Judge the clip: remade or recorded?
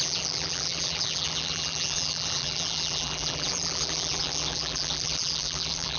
remade